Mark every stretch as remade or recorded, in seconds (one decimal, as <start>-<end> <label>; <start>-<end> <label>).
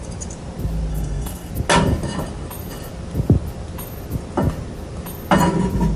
0.0-0.9 recorded; 0.9-1.5 remade; 1.5-6.0 recorded